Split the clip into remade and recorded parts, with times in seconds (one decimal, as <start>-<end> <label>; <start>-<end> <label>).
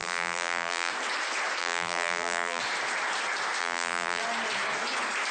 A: 0.0-0.9 remade; 0.9-1.6 recorded; 1.6-2.6 remade; 2.6-3.6 recorded; 3.6-4.2 remade; 4.2-5.3 recorded